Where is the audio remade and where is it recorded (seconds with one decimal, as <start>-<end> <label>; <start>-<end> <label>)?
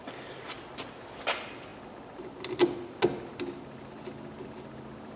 0.0-5.2 recorded